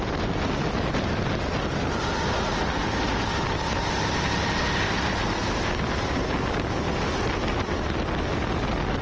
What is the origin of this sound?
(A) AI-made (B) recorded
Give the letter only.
B